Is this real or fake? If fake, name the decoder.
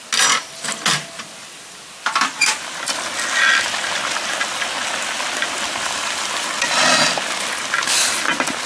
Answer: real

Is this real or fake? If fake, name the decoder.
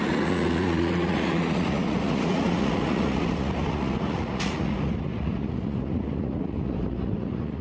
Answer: fake, vocoder, Vocos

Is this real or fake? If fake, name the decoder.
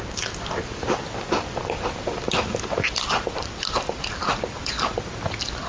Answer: real